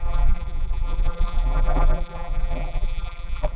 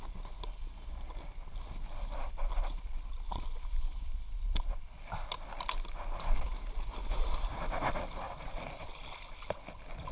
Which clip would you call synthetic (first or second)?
first